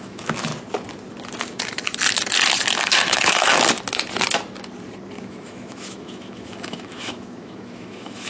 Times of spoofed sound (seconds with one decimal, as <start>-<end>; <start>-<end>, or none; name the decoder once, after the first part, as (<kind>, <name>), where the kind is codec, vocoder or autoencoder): 0.0-0.5 (autoencoder, DAC-VAE); 2.8-3.5; 5.2-8.3